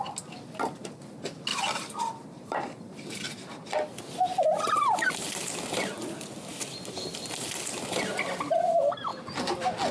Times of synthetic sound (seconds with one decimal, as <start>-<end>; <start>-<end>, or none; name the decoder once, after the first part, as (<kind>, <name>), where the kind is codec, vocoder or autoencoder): 1.5-5.1 (vocoder, BigVGAN v2)